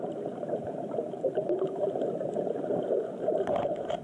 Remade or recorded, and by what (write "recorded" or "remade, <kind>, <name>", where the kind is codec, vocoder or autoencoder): remade, vocoder, BigVGAN v2